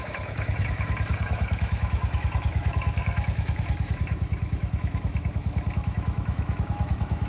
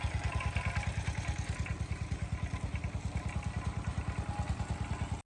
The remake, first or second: first